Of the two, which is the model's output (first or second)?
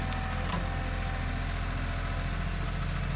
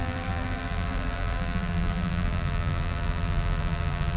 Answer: second